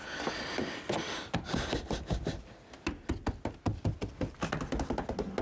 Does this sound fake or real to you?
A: real